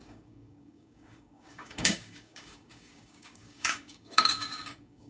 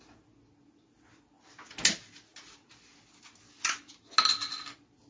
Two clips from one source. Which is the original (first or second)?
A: second